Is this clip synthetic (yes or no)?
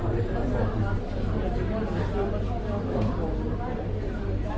no